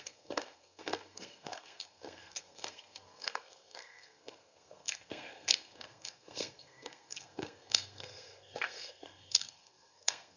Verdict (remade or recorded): remade